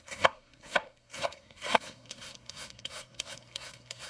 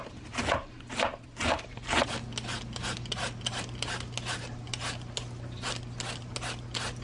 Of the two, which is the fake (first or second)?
first